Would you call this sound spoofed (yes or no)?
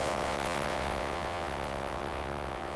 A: yes